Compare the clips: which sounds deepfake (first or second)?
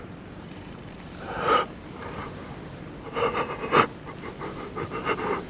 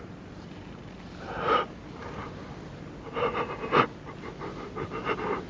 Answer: first